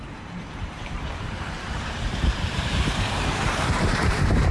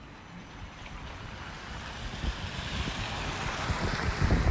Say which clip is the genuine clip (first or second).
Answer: second